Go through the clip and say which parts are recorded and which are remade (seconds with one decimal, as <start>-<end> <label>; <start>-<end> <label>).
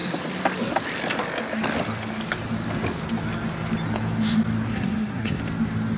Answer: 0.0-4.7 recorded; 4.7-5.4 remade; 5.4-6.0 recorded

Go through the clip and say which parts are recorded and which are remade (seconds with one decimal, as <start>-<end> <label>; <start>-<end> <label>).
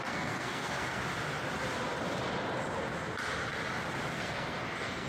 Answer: 0.0-1.0 remade; 1.0-4.1 recorded; 4.1-5.1 remade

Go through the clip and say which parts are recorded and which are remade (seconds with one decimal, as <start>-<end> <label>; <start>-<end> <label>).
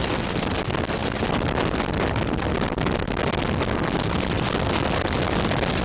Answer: 0.0-5.8 recorded